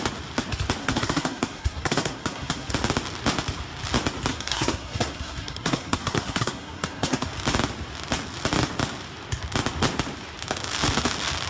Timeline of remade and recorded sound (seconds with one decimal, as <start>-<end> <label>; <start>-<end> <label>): 0.0-0.8 recorded; 0.8-2.7 remade; 2.7-4.3 recorded; 4.3-7.3 remade; 7.3-11.5 recorded